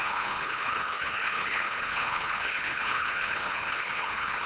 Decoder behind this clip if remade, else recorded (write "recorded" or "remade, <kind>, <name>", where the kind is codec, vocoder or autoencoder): remade, codec, HILCodec